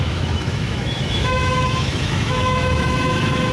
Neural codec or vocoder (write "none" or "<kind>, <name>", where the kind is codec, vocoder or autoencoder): autoencoder, DAC-VAE